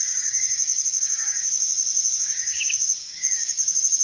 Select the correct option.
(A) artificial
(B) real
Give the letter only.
A